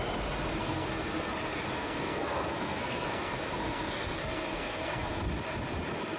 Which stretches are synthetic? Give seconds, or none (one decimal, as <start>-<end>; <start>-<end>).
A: 0.6-1.3; 1.8-5.2